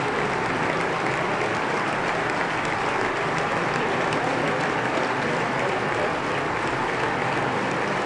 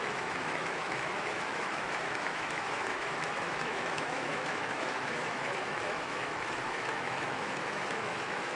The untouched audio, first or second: first